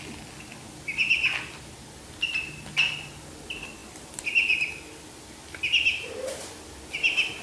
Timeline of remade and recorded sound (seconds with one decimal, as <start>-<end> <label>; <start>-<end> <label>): 0.0-7.4 recorded